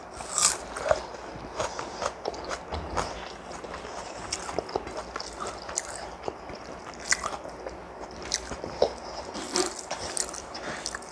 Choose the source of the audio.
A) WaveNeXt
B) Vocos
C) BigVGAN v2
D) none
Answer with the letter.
D